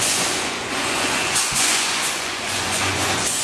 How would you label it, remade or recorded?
remade